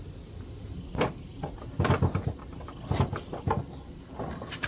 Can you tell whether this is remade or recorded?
recorded